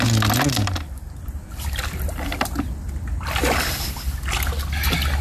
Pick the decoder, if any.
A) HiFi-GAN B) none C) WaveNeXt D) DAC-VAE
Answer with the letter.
B